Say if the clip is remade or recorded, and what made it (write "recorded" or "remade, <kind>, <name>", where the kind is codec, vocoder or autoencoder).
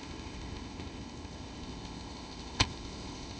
remade, codec, ZipCodec